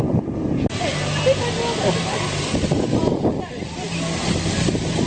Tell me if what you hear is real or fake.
real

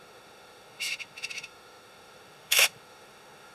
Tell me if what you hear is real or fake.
fake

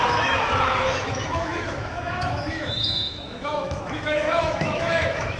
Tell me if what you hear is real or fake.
fake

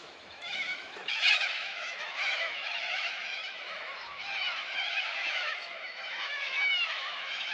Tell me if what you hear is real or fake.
fake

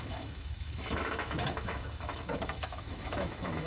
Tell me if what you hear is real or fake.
fake